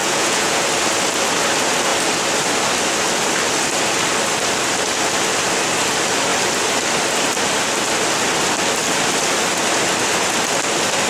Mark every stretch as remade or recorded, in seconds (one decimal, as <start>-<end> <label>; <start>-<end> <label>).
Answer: 0.0-0.7 remade; 0.7-11.1 recorded

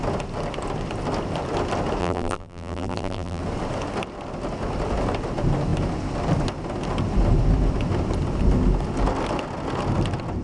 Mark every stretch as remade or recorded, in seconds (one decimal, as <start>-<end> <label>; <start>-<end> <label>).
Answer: 0.0-2.0 recorded; 2.0-3.4 remade; 3.4-10.4 recorded

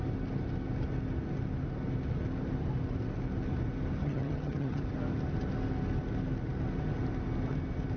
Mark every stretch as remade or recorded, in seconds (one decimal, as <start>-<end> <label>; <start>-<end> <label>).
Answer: 0.0-4.0 recorded; 4.0-4.8 remade; 4.8-8.0 recorded

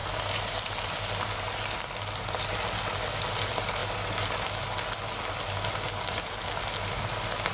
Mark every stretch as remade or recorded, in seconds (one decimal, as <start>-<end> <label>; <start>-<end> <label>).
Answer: 0.0-7.5 recorded

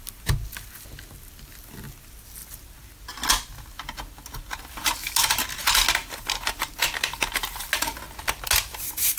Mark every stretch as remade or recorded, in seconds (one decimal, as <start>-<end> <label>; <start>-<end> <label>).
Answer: 0.0-6.0 recorded; 6.0-7.6 remade; 7.6-8.7 recorded; 8.7-9.2 remade

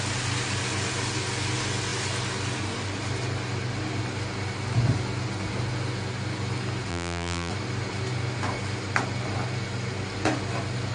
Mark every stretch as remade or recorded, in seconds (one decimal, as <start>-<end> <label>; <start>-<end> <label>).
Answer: 0.0-6.9 recorded; 6.9-7.5 remade; 7.5-10.9 recorded